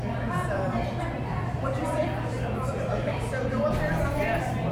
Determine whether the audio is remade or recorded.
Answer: remade